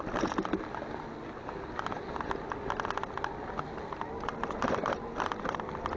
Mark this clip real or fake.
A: real